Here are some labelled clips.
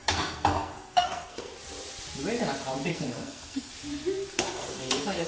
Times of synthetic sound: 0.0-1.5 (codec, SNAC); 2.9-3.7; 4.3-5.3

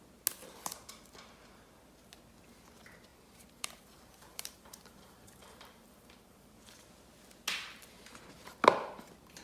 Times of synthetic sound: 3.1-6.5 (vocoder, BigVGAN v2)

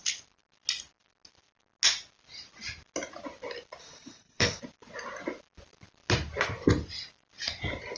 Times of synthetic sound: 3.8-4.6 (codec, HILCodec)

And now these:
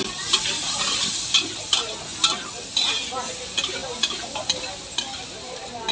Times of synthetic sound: none

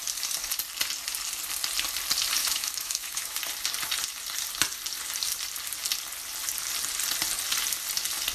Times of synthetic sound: 2.4-3.4 (autoencoder, DAC-VAE)